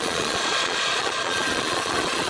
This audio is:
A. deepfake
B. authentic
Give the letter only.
A